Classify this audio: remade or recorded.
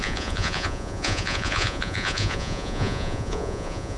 remade